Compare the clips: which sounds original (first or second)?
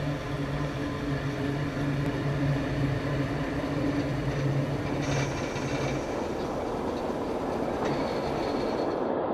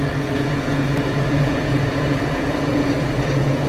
first